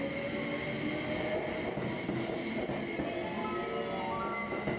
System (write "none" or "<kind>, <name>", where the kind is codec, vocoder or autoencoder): none